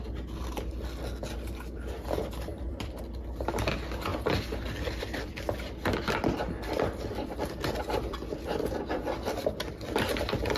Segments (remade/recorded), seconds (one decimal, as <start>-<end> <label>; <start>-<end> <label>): 0.0-2.5 recorded; 2.5-3.0 remade; 3.0-4.1 recorded; 4.1-5.3 remade; 5.3-10.6 recorded